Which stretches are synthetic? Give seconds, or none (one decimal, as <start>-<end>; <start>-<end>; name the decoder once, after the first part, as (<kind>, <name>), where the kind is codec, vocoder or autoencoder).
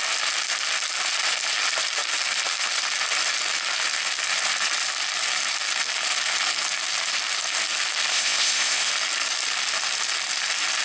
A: 8.1-8.9 (codec, ZipCodec)